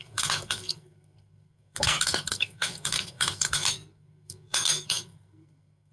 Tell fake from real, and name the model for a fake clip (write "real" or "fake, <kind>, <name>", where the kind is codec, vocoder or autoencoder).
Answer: fake, codec, SNAC